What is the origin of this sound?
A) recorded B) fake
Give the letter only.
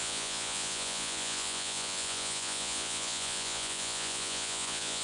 B